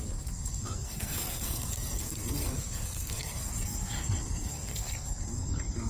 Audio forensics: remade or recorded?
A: remade